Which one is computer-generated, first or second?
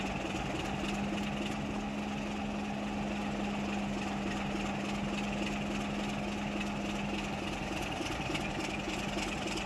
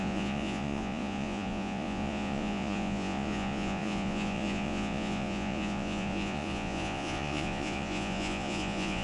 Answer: second